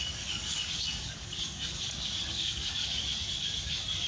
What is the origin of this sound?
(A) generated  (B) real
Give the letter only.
A